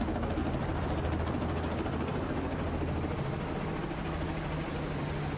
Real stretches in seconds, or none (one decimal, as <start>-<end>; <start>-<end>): 0.0-5.4